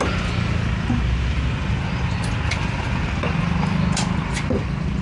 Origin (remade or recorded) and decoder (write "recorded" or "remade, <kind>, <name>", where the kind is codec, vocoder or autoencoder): recorded